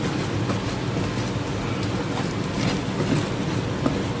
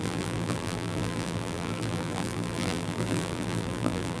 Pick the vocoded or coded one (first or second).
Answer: second